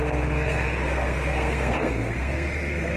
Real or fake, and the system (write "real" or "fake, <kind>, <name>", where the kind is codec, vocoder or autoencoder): fake, codec, SNAC